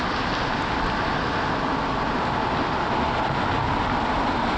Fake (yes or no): no